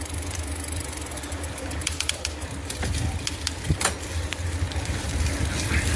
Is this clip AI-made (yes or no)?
no